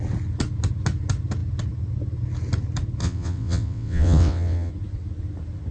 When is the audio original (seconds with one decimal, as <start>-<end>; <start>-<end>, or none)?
0.0-3.0; 4.7-5.7